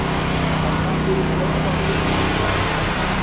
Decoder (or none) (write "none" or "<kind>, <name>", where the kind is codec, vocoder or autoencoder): none